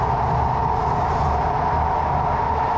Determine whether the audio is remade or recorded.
recorded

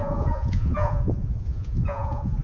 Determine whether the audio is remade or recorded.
remade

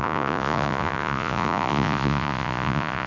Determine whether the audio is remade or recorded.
remade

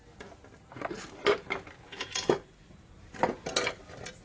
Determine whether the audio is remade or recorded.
recorded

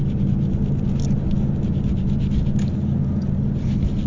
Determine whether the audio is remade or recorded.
recorded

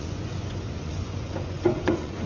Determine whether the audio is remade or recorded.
remade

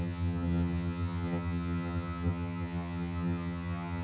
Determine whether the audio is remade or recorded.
remade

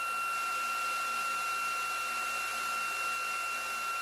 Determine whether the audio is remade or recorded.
recorded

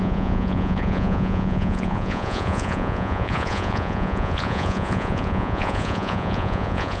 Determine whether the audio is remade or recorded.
remade